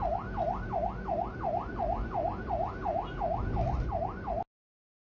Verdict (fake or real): real